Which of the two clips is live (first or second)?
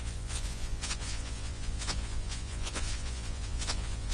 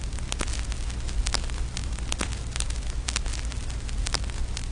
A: second